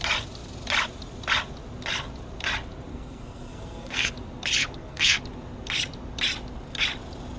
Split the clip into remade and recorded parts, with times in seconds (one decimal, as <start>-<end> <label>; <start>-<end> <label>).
0.0-2.9 recorded; 2.9-4.1 remade; 4.1-4.6 recorded; 4.6-5.2 remade; 5.2-7.4 recorded